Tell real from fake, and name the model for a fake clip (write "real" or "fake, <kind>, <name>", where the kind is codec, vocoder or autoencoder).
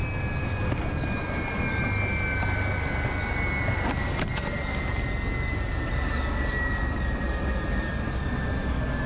real